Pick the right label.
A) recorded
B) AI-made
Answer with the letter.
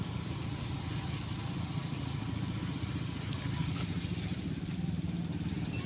A